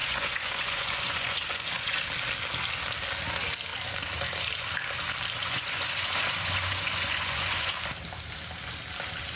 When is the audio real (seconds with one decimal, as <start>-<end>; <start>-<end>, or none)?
2.0-5.4; 7.7-9.4